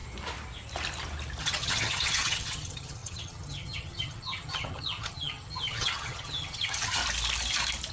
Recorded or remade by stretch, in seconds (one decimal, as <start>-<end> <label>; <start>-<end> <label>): 0.0-1.4 recorded; 1.4-7.0 remade; 7.0-7.9 recorded